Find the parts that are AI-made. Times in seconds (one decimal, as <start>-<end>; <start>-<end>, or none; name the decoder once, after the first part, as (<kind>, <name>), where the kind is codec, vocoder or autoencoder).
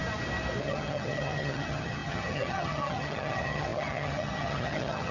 0.6-5.1 (vocoder, HiFi-GAN)